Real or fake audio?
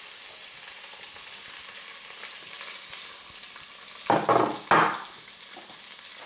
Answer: real